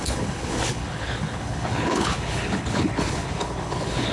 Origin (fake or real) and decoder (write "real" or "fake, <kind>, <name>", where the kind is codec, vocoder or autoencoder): fake, codec, HILCodec